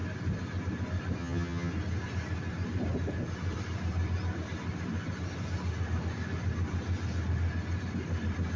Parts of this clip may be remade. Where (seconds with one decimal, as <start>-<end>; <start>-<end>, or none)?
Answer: 1.2-1.7